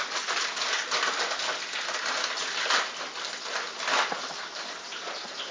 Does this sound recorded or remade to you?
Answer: recorded